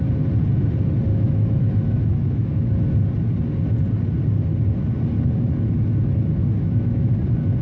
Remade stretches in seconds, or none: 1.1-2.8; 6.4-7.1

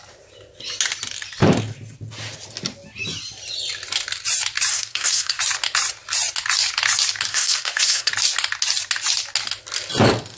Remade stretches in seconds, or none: 4.7-5.4; 7.3-8.1

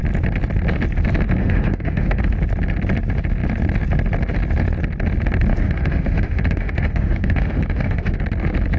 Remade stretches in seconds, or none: 1.4-2.2; 5.5-8.2

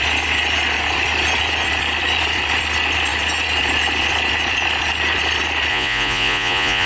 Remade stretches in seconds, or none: 5.7-6.9

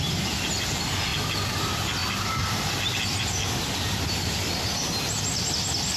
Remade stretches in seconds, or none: none

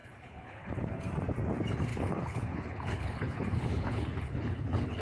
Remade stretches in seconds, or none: 0.0-1.0; 1.9-5.0

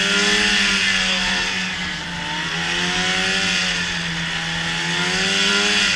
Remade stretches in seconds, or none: 1.1-2.0